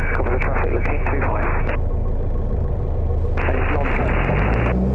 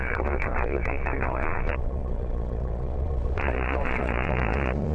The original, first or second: first